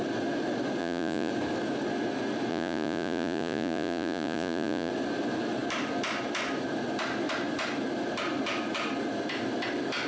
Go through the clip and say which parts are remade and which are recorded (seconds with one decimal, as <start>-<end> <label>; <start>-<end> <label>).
0.0-0.8 recorded; 0.8-1.3 remade; 1.3-2.5 recorded; 2.5-4.9 remade; 4.9-10.1 recorded